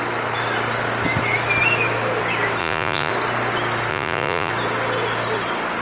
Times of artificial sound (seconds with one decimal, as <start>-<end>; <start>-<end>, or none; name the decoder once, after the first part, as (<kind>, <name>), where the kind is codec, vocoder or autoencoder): 2.6-3.1 (vocoder, Vocos); 3.9-4.5

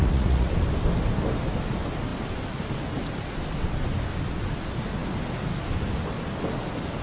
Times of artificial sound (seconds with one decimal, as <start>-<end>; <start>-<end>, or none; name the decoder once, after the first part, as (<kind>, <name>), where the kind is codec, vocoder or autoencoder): 0.0-0.5 (vocoder, Vocos)

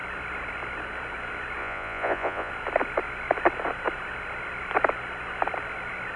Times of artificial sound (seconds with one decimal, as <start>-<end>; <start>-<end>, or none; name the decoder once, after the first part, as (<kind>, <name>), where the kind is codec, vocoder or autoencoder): 1.6-2.5 (vocoder, Vocos)

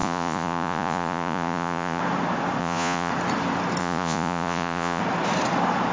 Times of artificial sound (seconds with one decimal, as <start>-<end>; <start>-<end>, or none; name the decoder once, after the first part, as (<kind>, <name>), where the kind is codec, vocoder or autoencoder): 0.0-2.0 (vocoder, Vocos); 2.6-3.1; 3.8-5.0

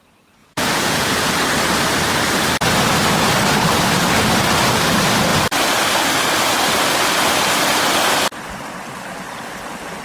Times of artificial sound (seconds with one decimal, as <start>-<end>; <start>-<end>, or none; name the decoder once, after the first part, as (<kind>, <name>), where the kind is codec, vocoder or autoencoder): 0.4-1.3 (vocoder, Vocos)

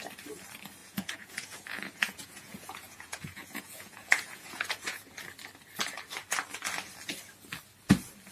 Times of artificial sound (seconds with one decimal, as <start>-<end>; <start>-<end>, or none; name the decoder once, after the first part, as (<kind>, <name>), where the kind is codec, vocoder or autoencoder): 0.8-5.1 (vocoder, Vocos)

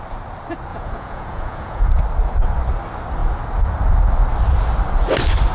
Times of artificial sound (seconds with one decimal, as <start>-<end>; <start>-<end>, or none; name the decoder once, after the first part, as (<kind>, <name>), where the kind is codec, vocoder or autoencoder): 0.7-2.0 (vocoder, Vocos)

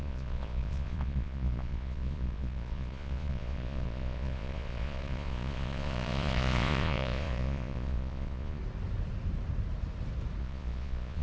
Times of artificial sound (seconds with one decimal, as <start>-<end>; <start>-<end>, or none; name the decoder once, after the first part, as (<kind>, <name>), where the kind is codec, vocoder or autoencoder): 0.0-8.6 (vocoder, Vocos); 10.4-11.2